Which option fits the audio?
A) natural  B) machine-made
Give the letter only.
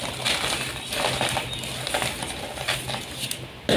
A